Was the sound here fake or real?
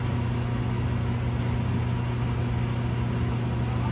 real